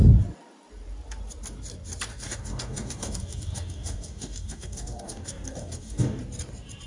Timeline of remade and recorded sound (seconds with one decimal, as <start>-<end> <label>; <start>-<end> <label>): 0.0-2.1 recorded; 2.1-6.2 remade; 6.2-6.9 recorded